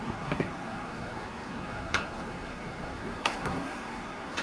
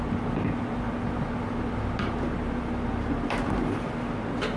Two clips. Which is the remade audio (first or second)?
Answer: first